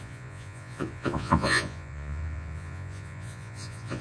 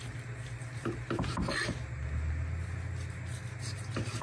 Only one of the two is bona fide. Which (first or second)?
second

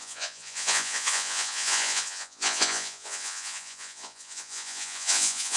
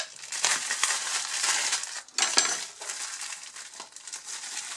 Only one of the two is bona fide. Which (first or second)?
second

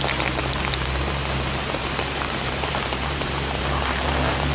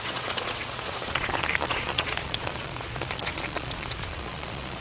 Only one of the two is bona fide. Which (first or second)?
first